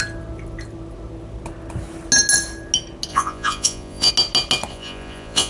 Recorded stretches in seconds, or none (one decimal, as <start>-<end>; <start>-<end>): 0.0-3.1; 4.1-4.7